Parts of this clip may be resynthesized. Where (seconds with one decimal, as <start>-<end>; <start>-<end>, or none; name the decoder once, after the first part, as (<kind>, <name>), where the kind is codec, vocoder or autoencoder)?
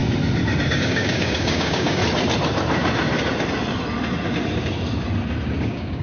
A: 0.7-2.0 (codec, DAC); 5.6-6.0